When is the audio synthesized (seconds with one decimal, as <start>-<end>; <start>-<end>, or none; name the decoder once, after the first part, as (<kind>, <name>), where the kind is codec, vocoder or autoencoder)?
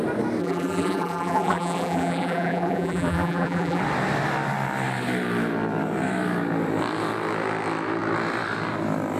0.4-3.8 (vocoder, BigVGAN v2)